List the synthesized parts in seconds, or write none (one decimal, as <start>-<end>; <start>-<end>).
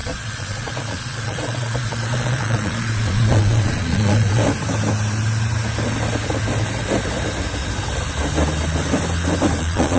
0.0-4.4; 9.6-10.0